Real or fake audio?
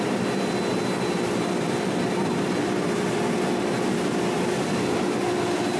real